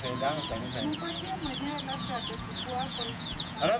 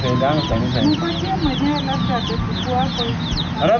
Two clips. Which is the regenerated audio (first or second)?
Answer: first